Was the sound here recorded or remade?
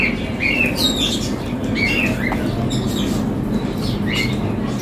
recorded